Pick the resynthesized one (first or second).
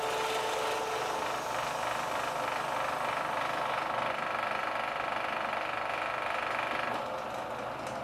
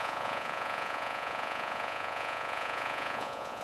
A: second